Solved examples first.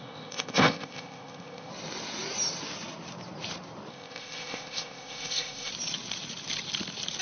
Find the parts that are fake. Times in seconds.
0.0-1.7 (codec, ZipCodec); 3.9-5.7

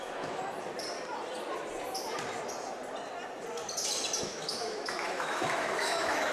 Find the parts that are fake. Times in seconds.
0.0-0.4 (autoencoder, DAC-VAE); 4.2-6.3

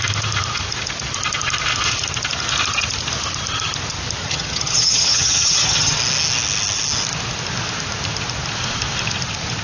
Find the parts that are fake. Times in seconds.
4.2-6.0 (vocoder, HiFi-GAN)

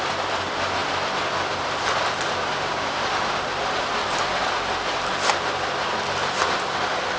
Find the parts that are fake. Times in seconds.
none

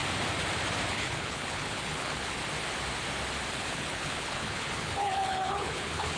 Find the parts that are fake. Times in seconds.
0.9-2.4 (codec, HILCodec); 3.5-6.2

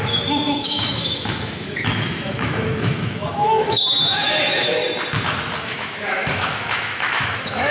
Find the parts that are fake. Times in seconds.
0.0-4.8 (autoencoder, DAC-VAE); 5.6-7.7